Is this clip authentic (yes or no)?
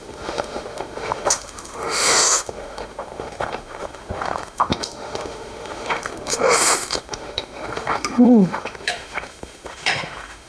no